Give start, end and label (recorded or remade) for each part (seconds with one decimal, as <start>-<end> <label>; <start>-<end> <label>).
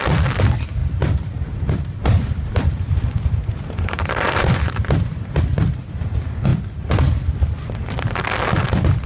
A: 0.0-0.8 recorded; 0.8-5.4 remade; 5.4-9.1 recorded